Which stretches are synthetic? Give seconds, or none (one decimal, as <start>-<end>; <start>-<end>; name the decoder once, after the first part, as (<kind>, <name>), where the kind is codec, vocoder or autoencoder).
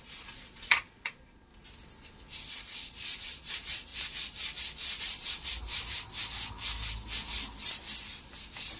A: 0.0-1.5 (vocoder, Vocos); 2.5-3.9; 5.0-5.5